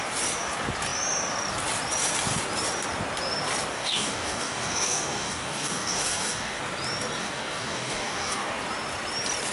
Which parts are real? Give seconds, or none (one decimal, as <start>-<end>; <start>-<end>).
0.0-3.7; 6.6-7.2; 8.5-9.5